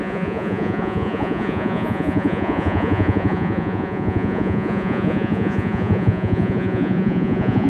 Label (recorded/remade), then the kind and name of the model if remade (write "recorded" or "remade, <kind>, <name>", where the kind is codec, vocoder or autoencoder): remade, vocoder, Vocos